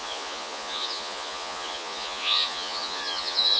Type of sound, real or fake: fake